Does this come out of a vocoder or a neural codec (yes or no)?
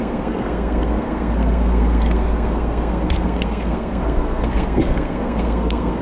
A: yes